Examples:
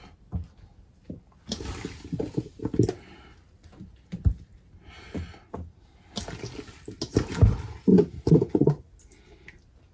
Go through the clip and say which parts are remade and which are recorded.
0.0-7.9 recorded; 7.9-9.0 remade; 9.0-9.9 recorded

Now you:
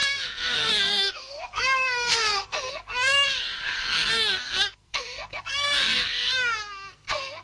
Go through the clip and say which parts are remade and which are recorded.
0.0-7.4 remade

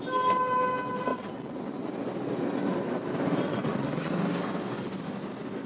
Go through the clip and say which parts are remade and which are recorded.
0.0-1.1 recorded; 1.1-1.9 remade; 1.9-3.4 recorded; 3.4-4.1 remade; 4.1-5.7 recorded